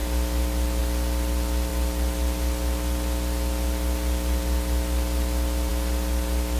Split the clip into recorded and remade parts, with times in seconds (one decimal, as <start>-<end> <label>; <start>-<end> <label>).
0.0-6.6 recorded